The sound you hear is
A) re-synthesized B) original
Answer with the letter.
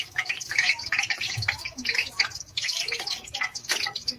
A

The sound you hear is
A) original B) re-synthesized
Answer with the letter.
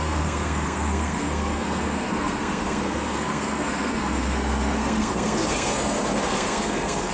B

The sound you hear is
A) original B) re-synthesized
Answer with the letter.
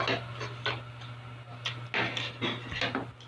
A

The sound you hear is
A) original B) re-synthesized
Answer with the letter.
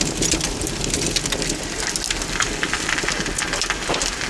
A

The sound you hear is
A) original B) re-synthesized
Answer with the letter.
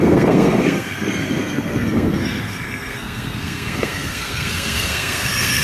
B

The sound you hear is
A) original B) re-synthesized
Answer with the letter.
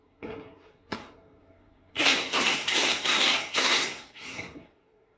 B